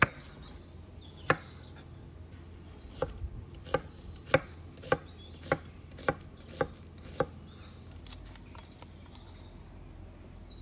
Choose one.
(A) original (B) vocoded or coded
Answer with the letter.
A